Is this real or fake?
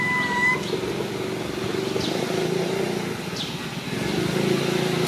real